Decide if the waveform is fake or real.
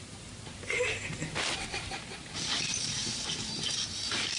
fake